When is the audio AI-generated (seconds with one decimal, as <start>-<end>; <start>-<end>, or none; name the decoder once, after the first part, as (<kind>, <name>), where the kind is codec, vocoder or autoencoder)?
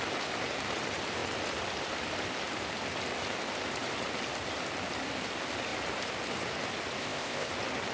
7.0-7.5 (codec, ZipCodec)